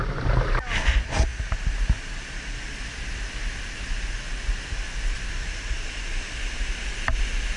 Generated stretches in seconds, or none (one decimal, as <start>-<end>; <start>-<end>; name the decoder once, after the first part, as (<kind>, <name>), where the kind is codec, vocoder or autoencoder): none